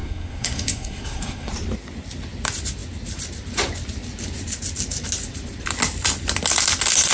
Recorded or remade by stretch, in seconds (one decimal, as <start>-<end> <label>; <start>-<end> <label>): 0.0-1.5 remade; 1.5-7.1 recorded